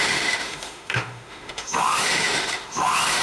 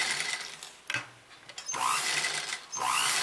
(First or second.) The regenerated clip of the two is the first